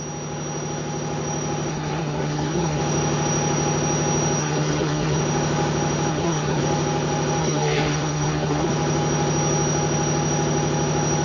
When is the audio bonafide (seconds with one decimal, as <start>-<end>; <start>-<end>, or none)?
0.0-1.7; 2.8-4.4; 5.2-6.1; 6.6-7.4; 8.7-11.2